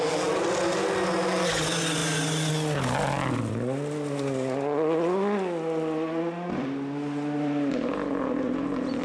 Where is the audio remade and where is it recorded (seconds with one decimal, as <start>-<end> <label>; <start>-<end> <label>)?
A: 0.0-9.0 recorded